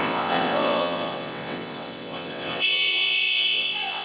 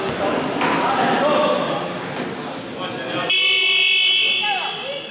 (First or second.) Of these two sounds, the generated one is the first